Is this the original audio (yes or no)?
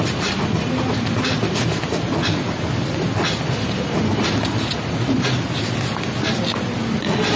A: yes